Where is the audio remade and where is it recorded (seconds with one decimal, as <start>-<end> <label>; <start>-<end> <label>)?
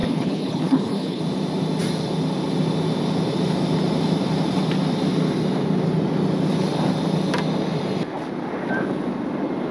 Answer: 0.0-1.2 remade; 1.2-9.7 recorded